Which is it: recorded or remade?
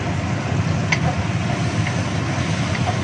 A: recorded